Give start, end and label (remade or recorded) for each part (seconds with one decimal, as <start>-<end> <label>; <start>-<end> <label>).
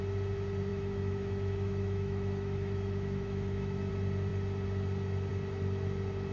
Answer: 0.0-0.7 recorded; 0.7-3.9 remade; 3.9-6.3 recorded